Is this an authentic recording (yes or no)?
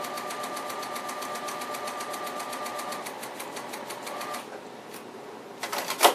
yes